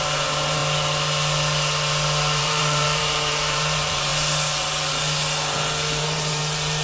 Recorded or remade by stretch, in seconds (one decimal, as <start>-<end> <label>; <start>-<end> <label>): 0.0-0.6 remade; 0.6-2.4 recorded; 2.4-4.1 remade; 4.1-6.0 recorded; 6.0-6.8 remade